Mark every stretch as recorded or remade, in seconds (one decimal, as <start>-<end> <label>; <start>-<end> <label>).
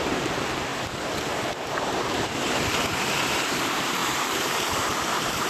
0.0-0.7 remade; 0.7-1.2 recorded; 1.2-5.5 remade